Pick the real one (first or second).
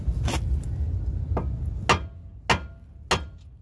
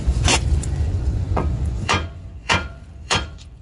first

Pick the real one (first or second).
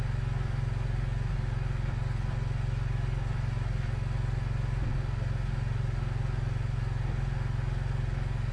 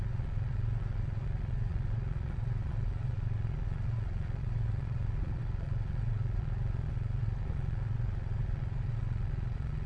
first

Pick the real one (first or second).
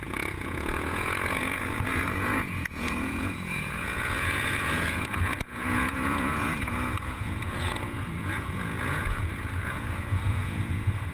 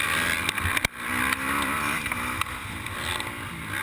second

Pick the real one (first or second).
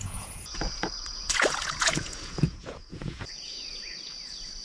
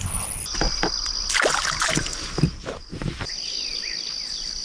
second